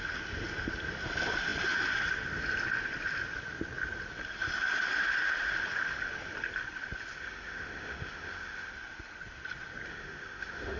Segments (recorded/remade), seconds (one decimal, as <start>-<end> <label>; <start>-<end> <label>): 0.0-7.1 recorded; 7.1-8.7 remade; 8.7-9.9 recorded; 9.9-10.8 remade